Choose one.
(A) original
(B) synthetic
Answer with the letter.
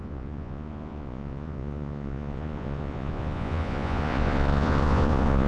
B